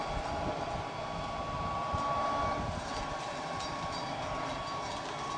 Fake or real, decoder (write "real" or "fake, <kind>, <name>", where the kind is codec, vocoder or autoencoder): real